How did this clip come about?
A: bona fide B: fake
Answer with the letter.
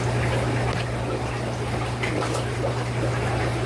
A